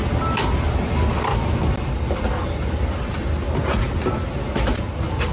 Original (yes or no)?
yes